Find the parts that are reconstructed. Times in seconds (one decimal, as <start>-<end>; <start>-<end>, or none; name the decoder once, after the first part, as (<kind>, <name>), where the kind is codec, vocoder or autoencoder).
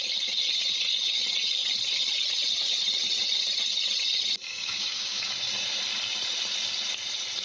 4.5-5.3 (codec, DAC)